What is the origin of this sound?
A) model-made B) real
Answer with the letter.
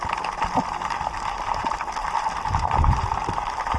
A